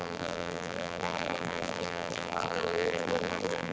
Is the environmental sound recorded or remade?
remade